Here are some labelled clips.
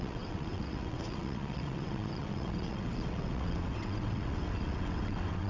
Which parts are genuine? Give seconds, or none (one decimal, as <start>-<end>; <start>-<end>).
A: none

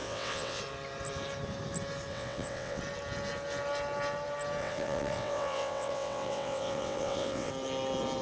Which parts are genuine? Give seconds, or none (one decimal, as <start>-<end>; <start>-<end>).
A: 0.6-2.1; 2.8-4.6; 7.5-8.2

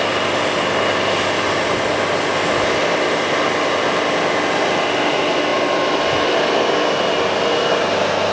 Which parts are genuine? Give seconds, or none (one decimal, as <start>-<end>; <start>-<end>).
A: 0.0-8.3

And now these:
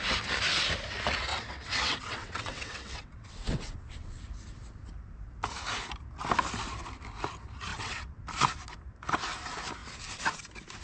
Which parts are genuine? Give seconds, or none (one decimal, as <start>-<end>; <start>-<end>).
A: 0.0-1.3; 4.2-7.7; 8.2-10.8

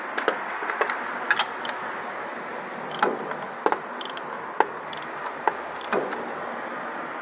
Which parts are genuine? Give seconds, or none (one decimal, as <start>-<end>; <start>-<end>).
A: 0.0-7.2

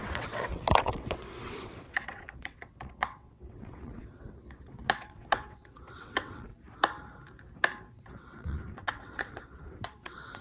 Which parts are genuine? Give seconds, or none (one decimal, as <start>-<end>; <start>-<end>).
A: 6.5-7.9